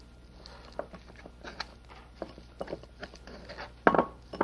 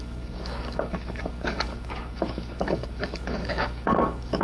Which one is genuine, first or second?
first